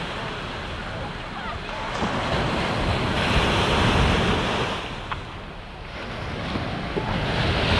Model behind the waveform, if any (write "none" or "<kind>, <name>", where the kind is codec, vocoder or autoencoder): none